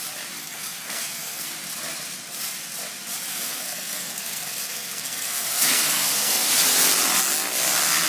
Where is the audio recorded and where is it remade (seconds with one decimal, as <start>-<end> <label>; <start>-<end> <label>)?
0.0-0.4 recorded; 0.4-1.5 remade; 1.5-3.3 recorded; 3.3-6.6 remade; 6.6-8.1 recorded